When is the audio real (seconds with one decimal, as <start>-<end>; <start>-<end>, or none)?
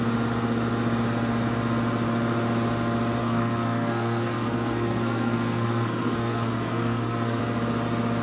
0.0-3.2; 7.4-8.2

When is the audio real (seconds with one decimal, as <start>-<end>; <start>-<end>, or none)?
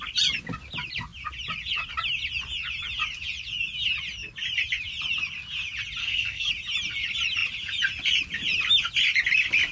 0.0-6.0; 6.5-9.7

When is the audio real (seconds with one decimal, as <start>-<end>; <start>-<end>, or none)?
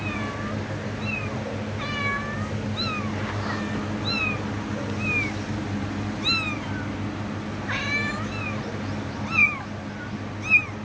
0.0-10.8